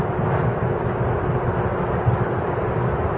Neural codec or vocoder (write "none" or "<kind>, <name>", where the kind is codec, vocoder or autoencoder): none